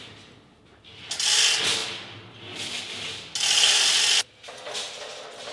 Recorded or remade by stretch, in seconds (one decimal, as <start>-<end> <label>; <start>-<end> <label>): 0.0-5.5 recorded